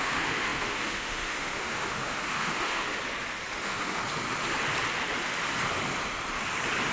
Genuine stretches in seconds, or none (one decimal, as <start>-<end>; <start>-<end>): 3.0-3.6; 4.0-6.9